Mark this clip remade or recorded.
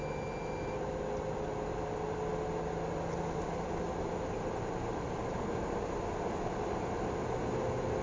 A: recorded